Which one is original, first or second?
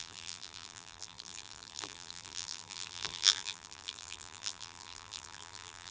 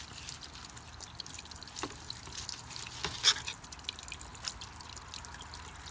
second